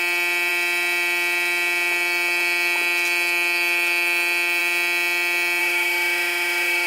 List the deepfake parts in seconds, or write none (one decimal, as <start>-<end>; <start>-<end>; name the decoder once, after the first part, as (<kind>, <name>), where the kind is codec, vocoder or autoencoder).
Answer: 5.6-6.9 (autoencoder, DAC-VAE)